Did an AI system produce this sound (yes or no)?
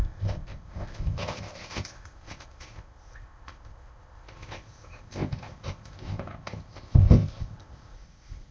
yes